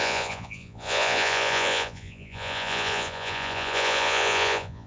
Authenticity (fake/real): fake